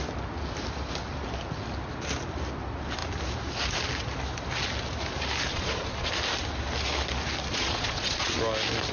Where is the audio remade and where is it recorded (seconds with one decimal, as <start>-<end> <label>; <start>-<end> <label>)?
0.0-5.5 recorded; 5.5-6.1 remade; 6.1-7.5 recorded; 7.5-8.4 remade; 8.4-8.9 recorded